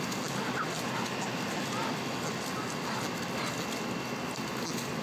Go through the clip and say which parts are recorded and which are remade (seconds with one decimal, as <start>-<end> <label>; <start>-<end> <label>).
0.0-5.0 recorded